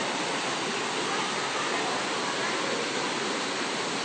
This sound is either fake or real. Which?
real